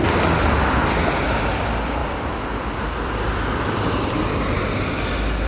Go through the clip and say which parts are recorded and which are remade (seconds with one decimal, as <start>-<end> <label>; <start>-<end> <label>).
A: 0.0-2.0 recorded; 2.0-5.1 remade; 5.1-5.5 recorded